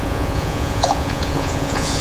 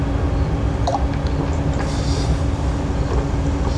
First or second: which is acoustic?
second